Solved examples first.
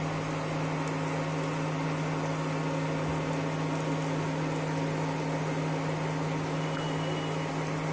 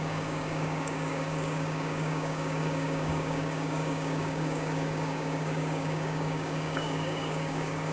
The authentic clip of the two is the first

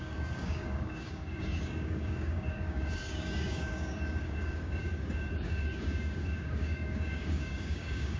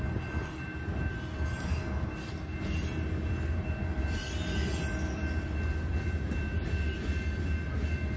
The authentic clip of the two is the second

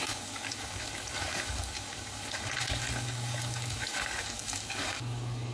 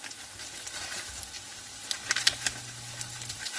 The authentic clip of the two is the second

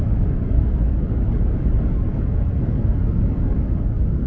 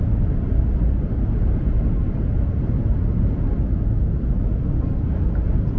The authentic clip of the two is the second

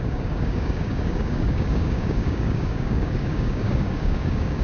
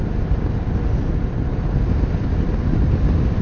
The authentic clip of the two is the second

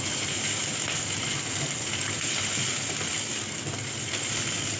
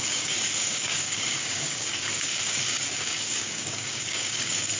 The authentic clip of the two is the first